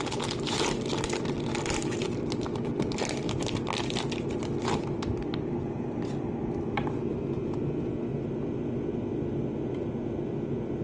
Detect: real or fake real